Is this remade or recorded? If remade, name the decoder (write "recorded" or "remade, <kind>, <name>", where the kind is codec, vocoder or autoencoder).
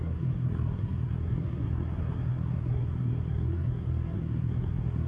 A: remade, codec, SNAC